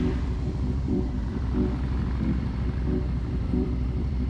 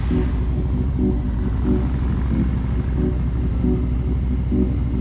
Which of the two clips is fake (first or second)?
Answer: first